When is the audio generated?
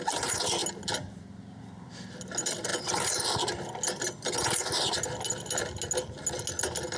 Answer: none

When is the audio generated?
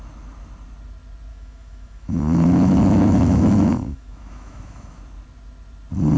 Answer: 1.3-5.0 (autoencoder, DAC-VAE)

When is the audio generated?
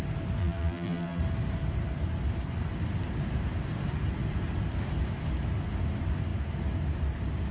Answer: 0.4-1.2 (vocoder, BigVGAN v2)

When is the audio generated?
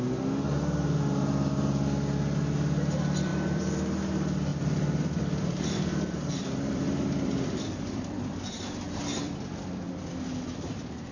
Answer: 3.3-4.0 (vocoder, BigVGAN v2); 4.5-8.4; 9.1-9.8